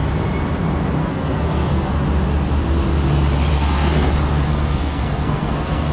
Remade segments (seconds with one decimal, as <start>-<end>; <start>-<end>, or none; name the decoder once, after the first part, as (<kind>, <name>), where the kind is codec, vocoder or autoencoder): 1.0-1.9 (codec, SNAC); 3.5-4.1; 4.5-5.9